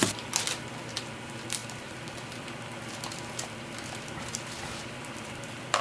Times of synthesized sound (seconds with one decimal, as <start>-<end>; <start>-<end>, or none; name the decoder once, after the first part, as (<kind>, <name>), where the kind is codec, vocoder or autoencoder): 0.0-5.8 (vocoder, BigVGAN v2)